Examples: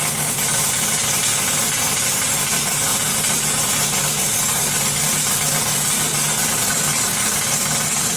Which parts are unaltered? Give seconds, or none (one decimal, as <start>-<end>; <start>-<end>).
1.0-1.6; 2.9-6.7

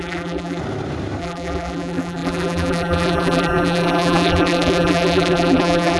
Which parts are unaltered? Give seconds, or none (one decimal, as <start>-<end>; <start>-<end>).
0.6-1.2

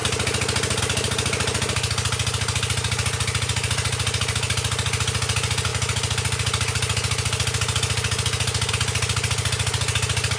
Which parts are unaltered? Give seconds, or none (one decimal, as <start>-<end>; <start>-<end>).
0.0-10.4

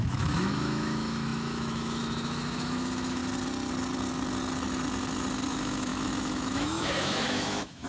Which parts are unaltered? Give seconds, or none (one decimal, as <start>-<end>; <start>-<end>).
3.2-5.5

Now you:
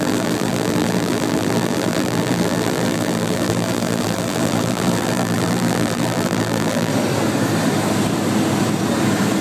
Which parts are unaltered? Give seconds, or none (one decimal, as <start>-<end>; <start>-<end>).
6.9-9.4

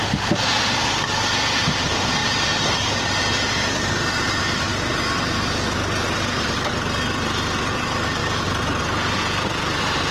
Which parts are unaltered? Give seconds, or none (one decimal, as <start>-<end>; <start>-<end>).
0.0-2.2; 3.2-10.1